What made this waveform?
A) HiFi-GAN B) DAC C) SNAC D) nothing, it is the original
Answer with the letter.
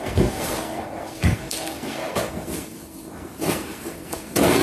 C